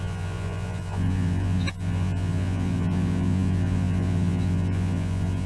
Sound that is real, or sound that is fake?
fake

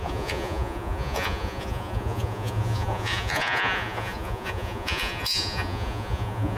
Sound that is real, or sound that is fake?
fake